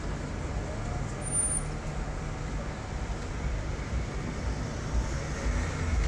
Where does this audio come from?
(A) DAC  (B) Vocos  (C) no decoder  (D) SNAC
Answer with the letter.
C